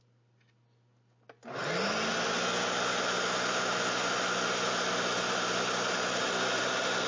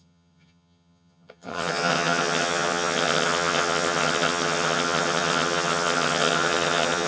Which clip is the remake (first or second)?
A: second